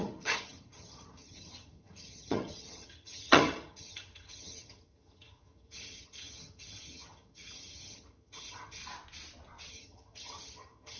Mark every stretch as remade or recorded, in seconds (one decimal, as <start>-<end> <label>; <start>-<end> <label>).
0.0-8.8 remade; 8.8-9.7 recorded; 9.7-11.0 remade